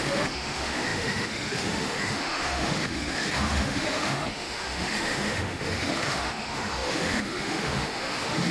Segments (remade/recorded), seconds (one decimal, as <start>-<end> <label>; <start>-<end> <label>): 0.0-8.5 remade